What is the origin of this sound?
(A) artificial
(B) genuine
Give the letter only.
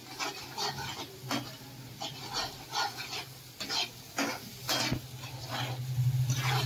B